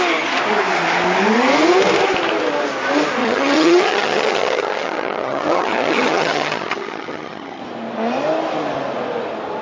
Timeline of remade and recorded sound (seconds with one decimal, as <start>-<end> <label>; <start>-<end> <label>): 0.0-3.2 recorded; 3.2-7.6 remade; 7.6-9.6 recorded